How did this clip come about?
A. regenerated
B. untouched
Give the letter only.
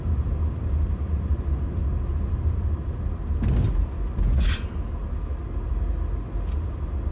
B